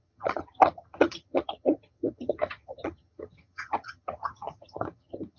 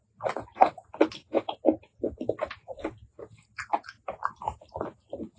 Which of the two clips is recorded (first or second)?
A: second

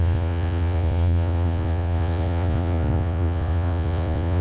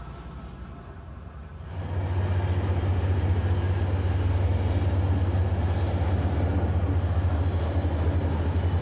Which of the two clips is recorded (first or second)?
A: second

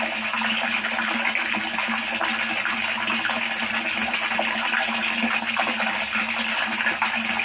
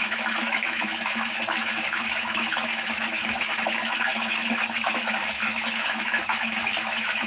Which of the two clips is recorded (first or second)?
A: first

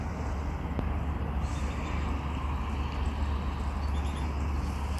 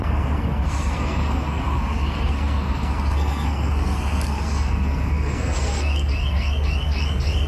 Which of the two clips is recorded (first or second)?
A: first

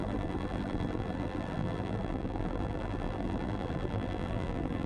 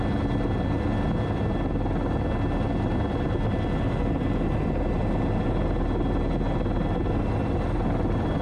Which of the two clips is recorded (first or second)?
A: second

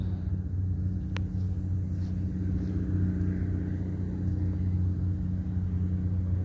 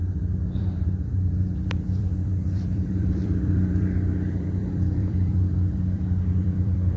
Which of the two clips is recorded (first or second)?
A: first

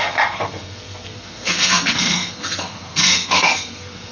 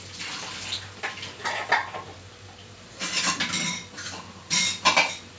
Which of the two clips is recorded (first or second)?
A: second